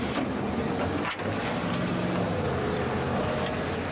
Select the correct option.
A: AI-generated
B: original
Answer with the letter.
B